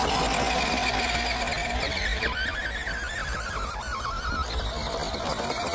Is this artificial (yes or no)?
no